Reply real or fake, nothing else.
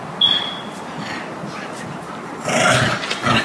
real